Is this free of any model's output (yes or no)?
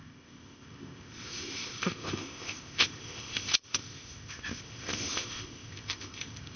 no